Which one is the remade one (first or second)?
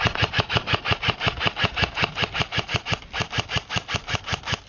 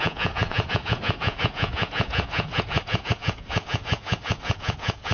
second